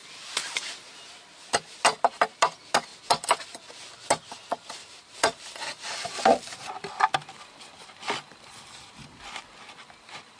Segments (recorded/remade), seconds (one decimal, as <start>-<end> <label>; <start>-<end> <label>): 0.0-4.8 recorded; 4.8-6.9 remade; 6.9-10.4 recorded